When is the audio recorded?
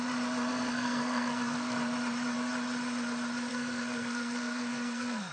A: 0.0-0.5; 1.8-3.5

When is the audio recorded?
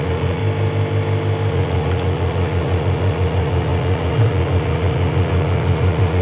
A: 0.4-1.5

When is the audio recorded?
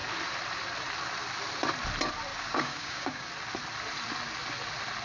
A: 0.0-2.3; 3.3-5.0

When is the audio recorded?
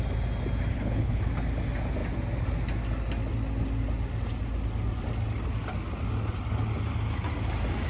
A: 0.0-0.7; 1.2-7.9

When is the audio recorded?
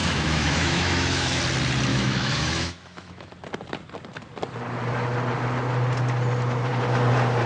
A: 1.4-1.9; 3.3-7.5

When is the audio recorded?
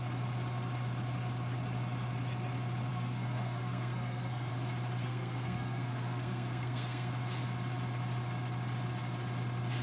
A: 0.0-2.9; 4.5-5.0; 7.1-9.8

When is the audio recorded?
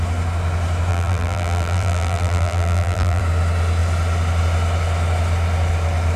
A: 0.0-0.9; 3.2-6.2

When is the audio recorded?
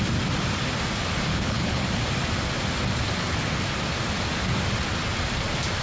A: 0.0-1.3; 1.9-5.8